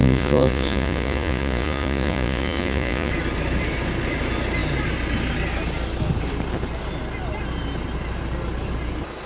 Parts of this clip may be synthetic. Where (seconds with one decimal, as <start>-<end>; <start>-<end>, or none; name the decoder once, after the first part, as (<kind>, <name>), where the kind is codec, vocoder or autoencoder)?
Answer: 0.0-3.1 (vocoder, Vocos)